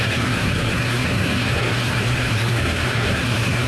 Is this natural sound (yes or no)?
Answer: no